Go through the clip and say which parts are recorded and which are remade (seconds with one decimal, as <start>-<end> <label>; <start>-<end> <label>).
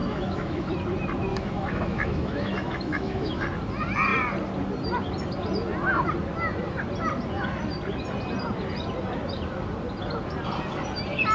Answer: 0.0-0.7 remade; 0.7-1.3 recorded; 1.3-3.4 remade; 3.4-11.3 recorded